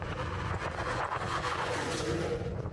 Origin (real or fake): fake